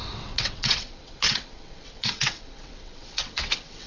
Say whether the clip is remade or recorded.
remade